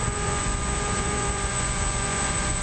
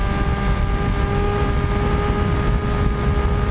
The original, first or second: second